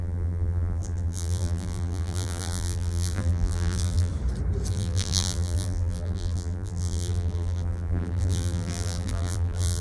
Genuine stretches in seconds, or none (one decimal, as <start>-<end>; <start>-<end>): 4.1-4.7